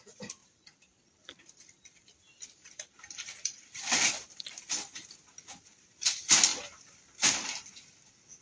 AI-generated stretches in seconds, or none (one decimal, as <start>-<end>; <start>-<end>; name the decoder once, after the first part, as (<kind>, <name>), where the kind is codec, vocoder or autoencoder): 0.4-4.7 (vocoder, BigVGAN v2); 6.5-8.4